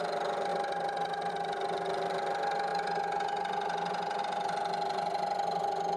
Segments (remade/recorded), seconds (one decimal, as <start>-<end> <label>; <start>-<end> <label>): 0.0-6.0 recorded